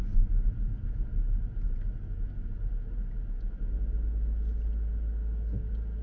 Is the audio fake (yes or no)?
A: no